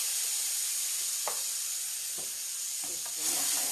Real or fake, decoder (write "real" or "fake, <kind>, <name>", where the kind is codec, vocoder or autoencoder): real